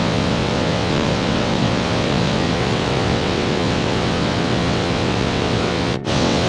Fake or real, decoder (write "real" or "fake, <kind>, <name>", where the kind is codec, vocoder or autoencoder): fake, vocoder, WaveNeXt